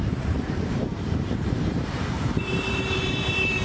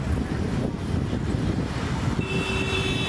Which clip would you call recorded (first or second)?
second